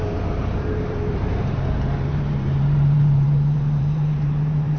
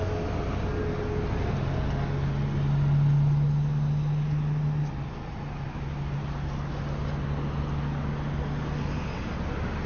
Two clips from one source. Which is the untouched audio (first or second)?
second